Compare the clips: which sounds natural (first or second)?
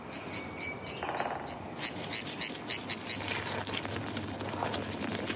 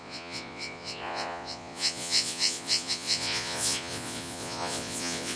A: first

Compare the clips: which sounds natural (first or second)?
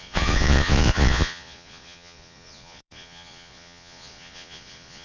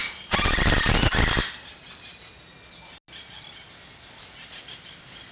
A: second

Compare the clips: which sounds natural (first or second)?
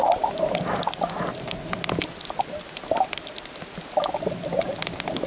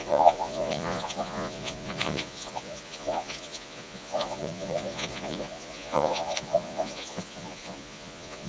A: first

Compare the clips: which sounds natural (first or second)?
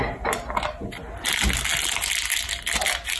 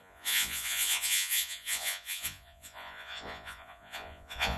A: first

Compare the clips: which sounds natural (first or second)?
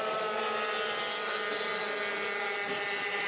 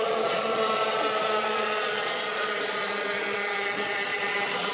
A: first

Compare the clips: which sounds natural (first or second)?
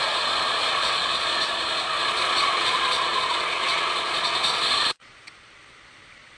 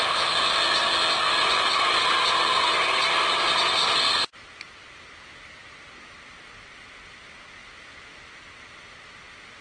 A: second